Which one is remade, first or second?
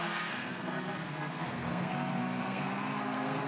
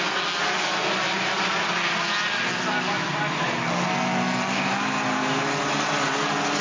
first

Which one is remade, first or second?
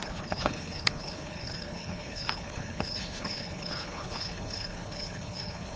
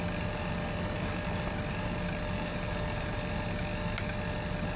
first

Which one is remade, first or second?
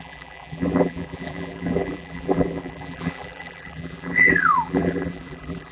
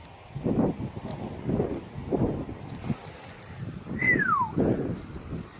first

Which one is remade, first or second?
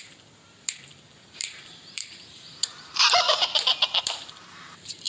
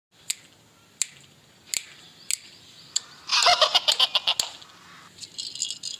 first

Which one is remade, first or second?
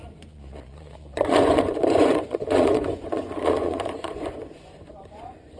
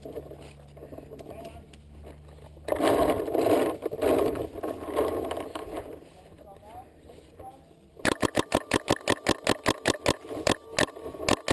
first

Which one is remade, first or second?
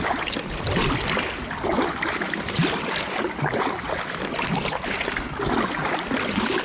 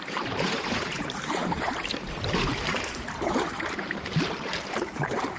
second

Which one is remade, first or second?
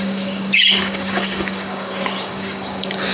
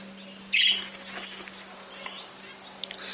first